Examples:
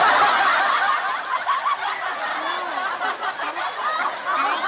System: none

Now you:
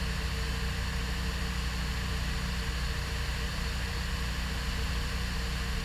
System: none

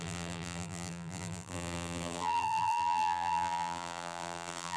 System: vocoder, BigVGAN v2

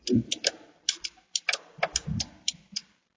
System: vocoder, BigVGAN v2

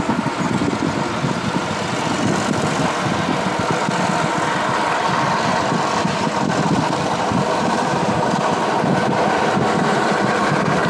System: vocoder, BigVGAN v2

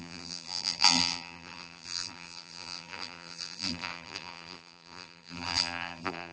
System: vocoder, BigVGAN v2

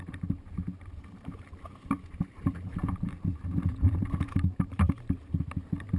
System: vocoder, BigVGAN v2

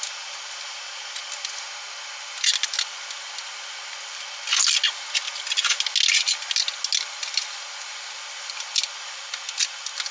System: none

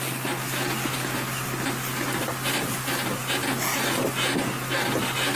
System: none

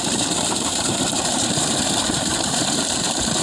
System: vocoder, BigVGAN v2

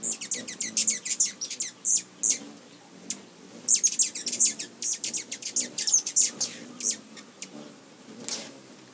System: none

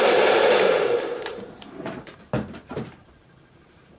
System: vocoder, BigVGAN v2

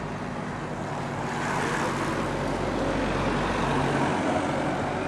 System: none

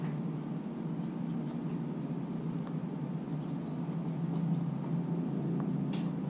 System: none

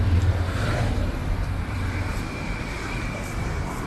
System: vocoder, BigVGAN v2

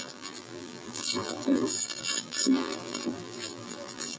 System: vocoder, BigVGAN v2